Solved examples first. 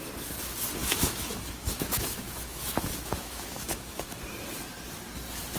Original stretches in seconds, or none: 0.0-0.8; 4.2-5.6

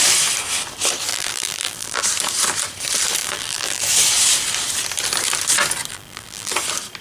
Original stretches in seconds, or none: 0.0-1.1; 2.0-3.2; 3.8-5.9; 6.5-7.0

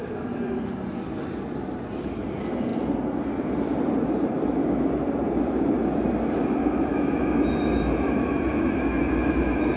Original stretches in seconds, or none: 0.0-6.9